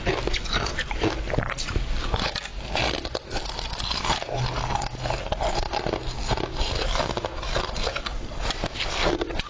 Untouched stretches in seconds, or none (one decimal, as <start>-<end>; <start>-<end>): 0.0-8.6; 9.1-9.5